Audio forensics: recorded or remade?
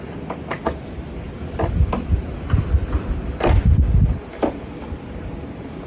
recorded